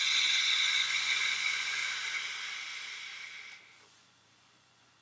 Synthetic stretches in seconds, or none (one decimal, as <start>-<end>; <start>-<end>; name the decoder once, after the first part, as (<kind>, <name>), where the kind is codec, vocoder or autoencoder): 0.0-1.8 (vocoder, Vocos); 3.6-5.0